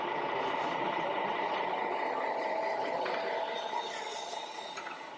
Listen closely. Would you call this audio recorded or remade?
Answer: recorded